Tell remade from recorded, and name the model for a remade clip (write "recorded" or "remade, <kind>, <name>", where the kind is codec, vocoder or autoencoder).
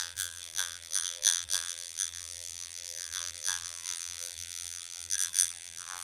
remade, vocoder, BigVGAN v2